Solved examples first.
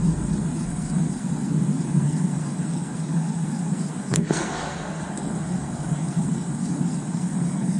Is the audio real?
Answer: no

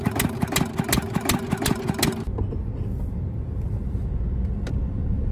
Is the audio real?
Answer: yes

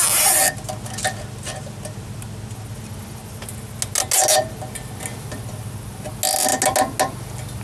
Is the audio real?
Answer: yes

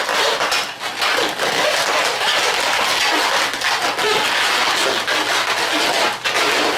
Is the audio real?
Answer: yes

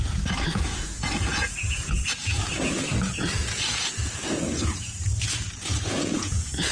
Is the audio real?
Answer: no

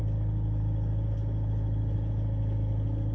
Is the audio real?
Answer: yes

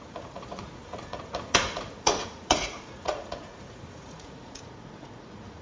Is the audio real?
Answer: no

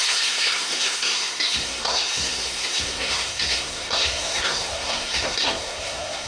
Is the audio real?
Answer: no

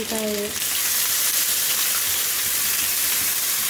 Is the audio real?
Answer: yes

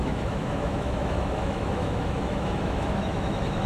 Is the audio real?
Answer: no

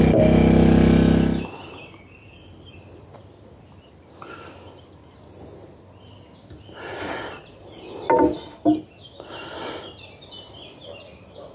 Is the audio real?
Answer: yes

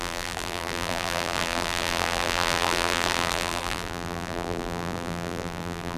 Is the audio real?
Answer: no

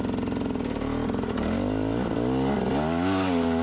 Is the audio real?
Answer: yes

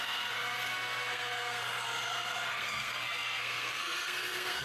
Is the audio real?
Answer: no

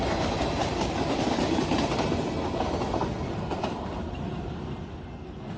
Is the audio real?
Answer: yes